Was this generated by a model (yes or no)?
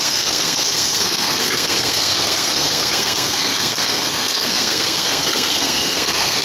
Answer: yes